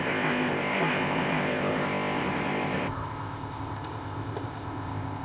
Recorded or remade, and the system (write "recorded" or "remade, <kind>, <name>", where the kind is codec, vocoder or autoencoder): remade, codec, ZipCodec